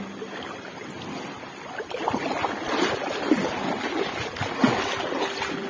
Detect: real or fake real